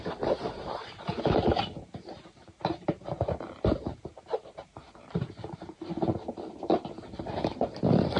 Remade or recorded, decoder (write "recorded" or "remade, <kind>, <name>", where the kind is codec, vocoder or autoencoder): remade, vocoder, BigVGAN v2